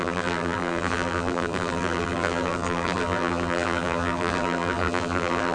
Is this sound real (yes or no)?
no